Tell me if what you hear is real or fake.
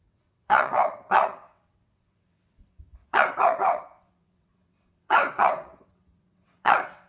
fake